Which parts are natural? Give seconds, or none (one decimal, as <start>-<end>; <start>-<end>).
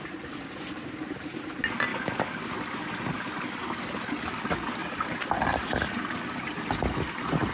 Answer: 0.0-1.9; 2.5-7.5